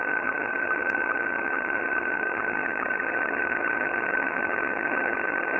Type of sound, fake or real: fake